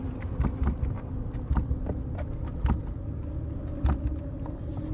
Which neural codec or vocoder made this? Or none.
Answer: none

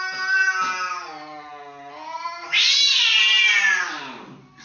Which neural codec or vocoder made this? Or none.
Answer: none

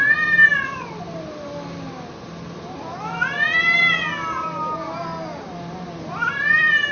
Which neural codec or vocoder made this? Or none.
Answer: none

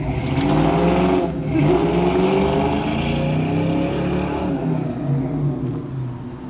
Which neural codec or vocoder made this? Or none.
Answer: none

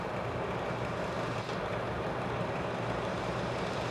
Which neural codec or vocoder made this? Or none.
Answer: vocoder, BigVGAN v2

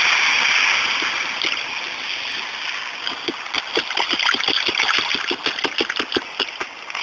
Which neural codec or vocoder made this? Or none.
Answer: none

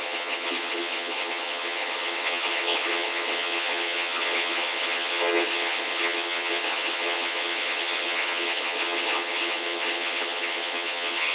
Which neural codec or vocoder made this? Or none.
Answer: vocoder, HiFi-GAN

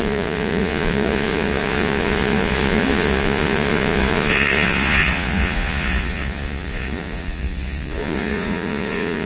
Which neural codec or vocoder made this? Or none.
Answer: vocoder, Vocos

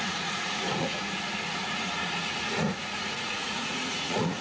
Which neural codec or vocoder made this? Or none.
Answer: vocoder, Vocos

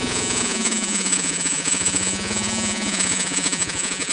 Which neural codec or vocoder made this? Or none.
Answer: vocoder, Vocos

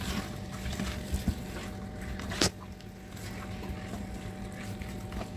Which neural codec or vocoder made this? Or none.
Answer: none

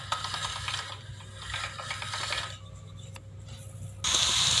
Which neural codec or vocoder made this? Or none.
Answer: none